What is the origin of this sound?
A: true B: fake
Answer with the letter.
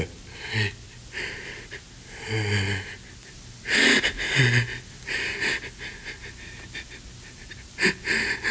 A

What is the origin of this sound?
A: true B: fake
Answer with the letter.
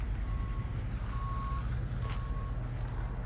A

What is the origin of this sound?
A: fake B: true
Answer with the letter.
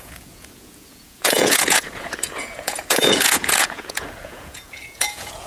A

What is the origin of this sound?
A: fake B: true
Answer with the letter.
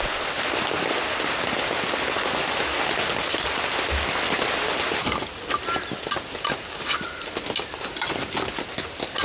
B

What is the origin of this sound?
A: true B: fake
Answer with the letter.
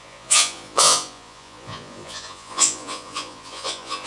B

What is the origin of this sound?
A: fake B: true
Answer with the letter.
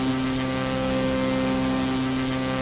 B